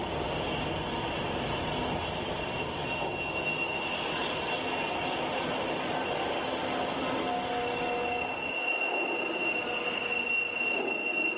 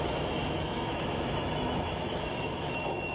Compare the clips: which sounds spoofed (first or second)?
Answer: second